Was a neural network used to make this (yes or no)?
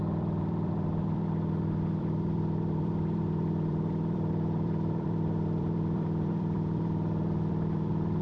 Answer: yes